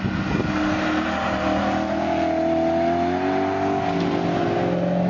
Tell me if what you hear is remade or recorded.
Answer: recorded